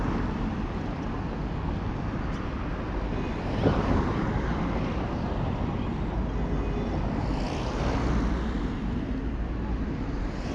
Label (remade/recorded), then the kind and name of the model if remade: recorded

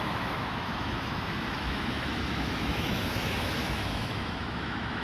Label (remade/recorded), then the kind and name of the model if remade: remade, autoencoder, DAC-VAE